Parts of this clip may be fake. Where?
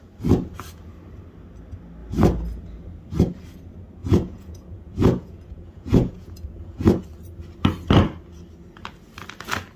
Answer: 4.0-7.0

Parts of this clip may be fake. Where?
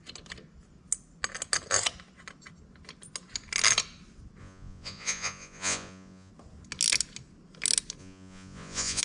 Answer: 4.4-6.3; 8.0-9.0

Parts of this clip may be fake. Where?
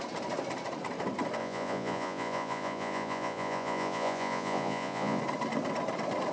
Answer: 1.4-5.2